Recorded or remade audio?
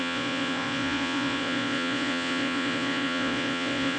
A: remade